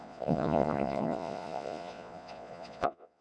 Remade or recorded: remade